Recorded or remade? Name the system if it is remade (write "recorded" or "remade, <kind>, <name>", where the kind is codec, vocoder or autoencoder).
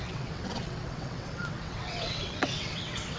remade, vocoder, WaveNeXt